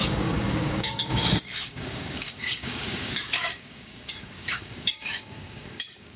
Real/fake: fake